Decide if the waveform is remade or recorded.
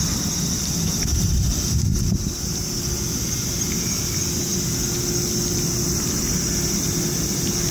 recorded